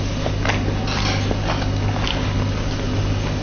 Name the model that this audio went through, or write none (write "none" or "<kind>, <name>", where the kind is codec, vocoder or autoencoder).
none